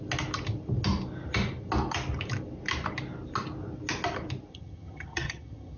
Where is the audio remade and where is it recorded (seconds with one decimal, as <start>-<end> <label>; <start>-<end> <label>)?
0.0-4.5 recorded; 4.5-5.8 remade